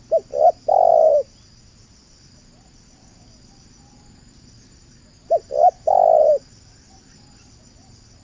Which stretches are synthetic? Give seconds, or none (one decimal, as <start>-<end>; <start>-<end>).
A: none